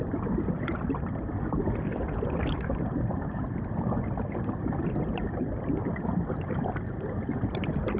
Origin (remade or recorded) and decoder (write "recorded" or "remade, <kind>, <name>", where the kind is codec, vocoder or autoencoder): remade, vocoder, BigVGAN v2